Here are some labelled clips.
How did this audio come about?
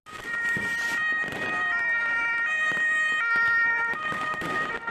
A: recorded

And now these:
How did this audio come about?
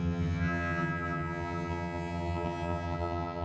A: remade